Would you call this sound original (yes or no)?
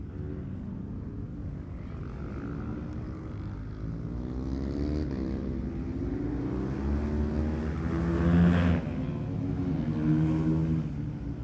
yes